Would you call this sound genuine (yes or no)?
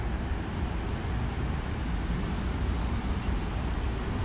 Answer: yes